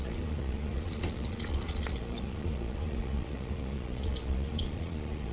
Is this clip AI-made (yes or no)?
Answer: yes